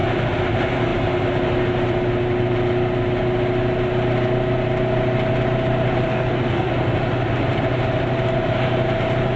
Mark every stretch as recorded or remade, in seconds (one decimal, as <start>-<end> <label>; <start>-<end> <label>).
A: 0.0-6.1 recorded; 6.1-6.7 remade; 6.7-9.4 recorded